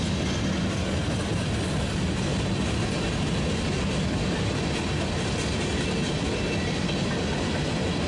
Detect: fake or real real